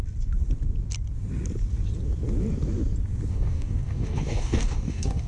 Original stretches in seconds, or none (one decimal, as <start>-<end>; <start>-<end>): 0.0-3.3

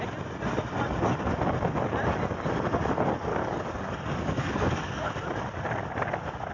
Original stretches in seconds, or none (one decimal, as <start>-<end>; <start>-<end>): 0.0-3.3; 5.1-6.5

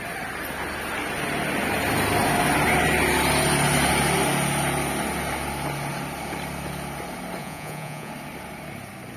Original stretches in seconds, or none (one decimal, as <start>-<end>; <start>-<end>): 0.0-7.4; 8.1-9.2